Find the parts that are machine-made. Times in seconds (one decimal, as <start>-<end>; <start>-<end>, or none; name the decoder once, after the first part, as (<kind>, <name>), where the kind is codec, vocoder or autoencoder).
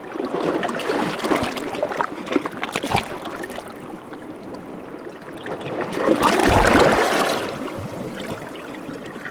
none